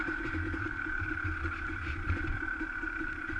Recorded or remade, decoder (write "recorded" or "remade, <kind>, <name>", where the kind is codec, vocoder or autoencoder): recorded